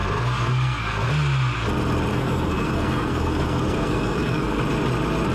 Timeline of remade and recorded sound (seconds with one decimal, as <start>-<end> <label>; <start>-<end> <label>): 0.0-1.1 remade; 1.1-2.1 recorded; 2.1-4.6 remade; 4.6-5.3 recorded